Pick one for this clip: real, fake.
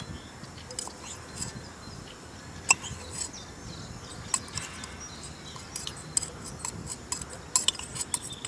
real